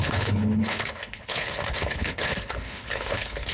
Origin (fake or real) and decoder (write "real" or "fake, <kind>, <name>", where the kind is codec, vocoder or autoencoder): fake, codec, HILCodec